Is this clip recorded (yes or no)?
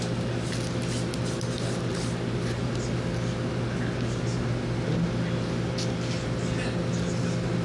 yes